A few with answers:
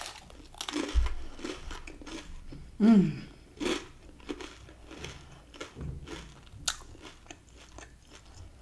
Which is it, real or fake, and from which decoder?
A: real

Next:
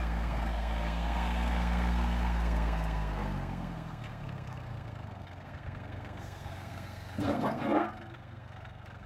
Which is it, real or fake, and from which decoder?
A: fake, codec, SNAC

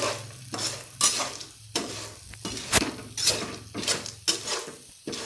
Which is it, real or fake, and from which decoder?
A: real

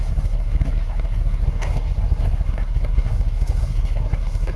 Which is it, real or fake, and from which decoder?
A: fake, codec, SNAC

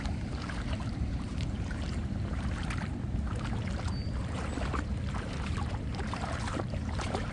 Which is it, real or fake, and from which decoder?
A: fake, vocoder, BigVGAN v2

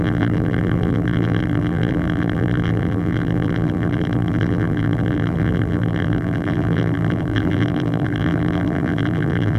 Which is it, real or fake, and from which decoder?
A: fake, vocoder, BigVGAN v2